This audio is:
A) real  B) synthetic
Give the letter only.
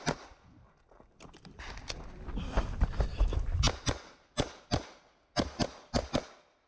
A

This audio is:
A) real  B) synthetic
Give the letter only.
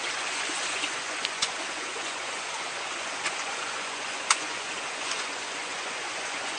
B